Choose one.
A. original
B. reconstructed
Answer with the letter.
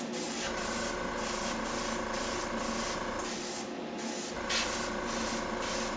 A